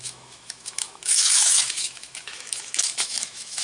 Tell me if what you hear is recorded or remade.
remade